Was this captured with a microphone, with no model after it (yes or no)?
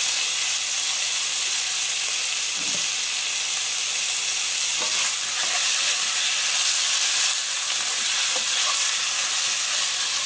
yes